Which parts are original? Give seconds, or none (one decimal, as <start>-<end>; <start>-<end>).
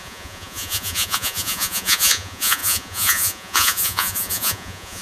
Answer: none